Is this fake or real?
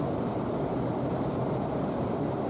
fake